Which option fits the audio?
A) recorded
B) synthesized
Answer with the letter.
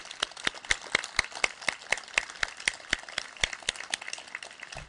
A